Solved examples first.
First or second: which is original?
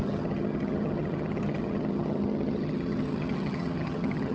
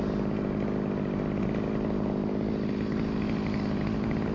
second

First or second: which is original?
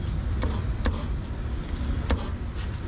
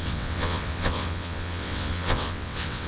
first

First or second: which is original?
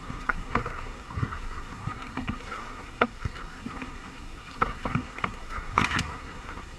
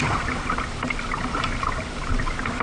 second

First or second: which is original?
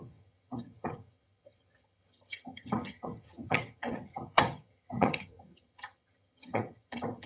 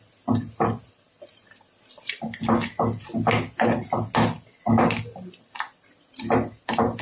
second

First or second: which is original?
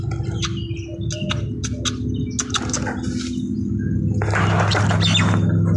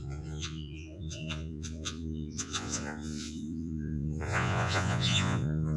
first